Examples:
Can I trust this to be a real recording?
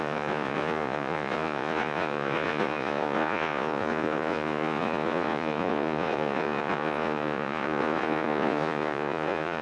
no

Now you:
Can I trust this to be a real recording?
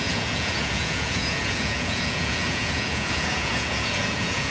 no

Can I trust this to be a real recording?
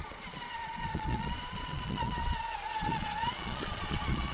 no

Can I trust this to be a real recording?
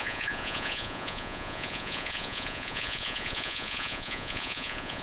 no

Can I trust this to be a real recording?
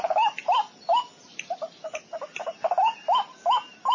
yes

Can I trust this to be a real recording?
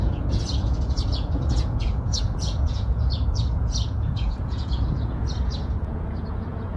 no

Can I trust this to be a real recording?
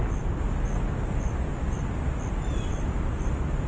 yes